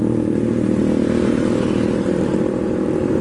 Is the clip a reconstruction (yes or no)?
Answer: no